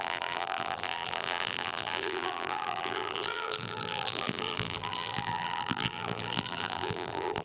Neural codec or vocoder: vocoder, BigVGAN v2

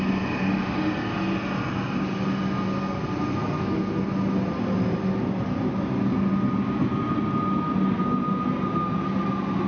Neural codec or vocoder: none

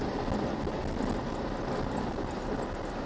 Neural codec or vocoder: none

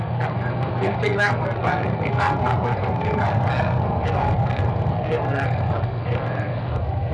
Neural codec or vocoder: codec, SNAC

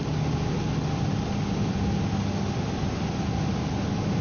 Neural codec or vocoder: none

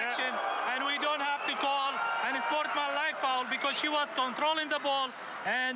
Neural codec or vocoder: none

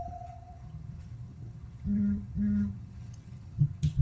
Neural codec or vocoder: vocoder, HiFi-GAN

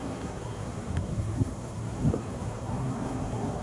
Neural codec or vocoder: codec, SNAC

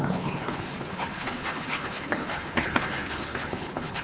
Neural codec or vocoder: codec, HILCodec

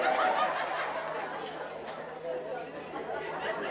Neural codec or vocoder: none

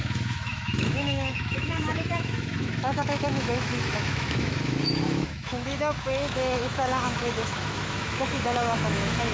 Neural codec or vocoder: autoencoder, DAC-VAE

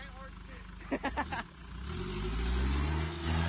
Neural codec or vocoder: none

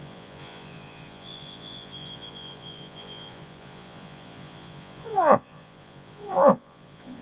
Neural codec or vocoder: vocoder, Vocos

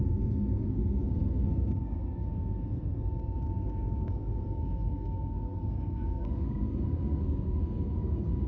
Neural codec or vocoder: codec, SNAC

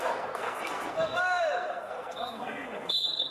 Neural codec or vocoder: codec, SNAC